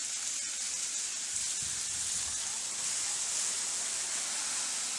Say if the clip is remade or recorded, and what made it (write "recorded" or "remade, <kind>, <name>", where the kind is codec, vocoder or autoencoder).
recorded